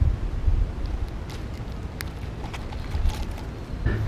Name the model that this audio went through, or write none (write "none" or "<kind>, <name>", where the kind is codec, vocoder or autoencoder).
none